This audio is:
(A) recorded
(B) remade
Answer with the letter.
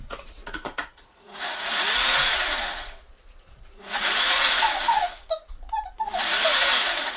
B